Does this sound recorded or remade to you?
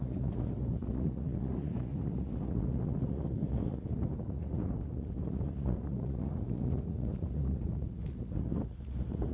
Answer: remade